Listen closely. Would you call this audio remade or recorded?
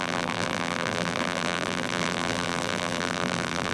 remade